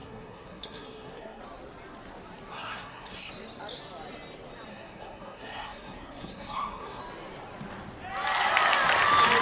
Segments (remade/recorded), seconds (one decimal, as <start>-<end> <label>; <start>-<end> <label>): 0.0-1.4 remade; 1.4-2.5 recorded; 2.5-3.3 remade; 3.3-4.7 recorded; 4.7-7.0 remade; 7.0-9.4 recorded